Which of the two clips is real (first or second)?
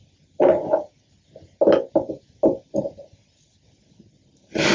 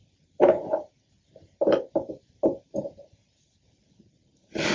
first